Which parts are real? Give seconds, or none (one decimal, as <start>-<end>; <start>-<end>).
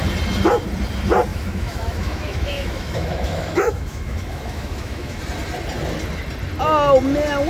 0.0-1.3; 5.2-7.5